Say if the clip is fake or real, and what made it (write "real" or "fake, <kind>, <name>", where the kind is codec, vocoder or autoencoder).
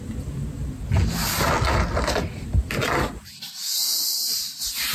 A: real